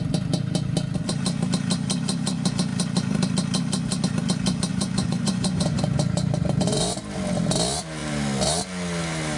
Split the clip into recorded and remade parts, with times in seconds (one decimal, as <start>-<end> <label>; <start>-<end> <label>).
0.0-4.7 recorded; 4.7-7.0 remade; 7.0-9.4 recorded